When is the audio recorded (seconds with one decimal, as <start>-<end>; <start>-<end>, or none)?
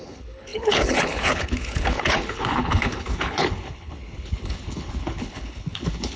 none